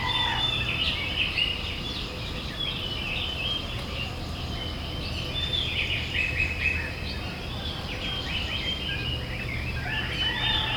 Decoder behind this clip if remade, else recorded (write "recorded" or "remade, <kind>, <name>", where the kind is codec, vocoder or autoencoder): recorded